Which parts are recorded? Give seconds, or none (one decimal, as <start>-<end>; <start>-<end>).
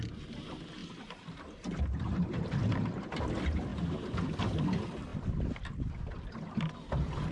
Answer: 0.0-0.8; 3.1-3.7; 4.2-7.3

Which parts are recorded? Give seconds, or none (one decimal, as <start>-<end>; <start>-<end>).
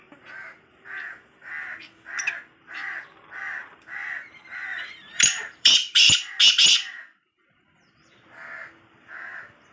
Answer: 0.0-4.7; 5.7-9.7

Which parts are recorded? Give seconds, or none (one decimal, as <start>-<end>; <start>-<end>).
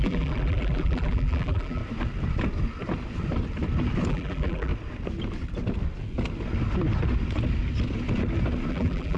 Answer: 1.8-4.1; 4.7-8.7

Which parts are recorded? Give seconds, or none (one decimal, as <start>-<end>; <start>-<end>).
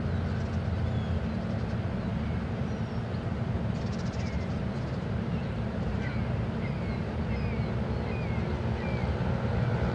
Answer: 0.0-2.1; 7.2-9.0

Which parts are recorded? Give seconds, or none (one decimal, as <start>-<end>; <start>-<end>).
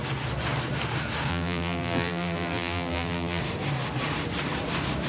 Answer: 0.0-1.3; 3.4-5.1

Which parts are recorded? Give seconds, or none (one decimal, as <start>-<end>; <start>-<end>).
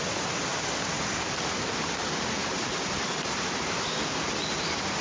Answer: 0.0-5.0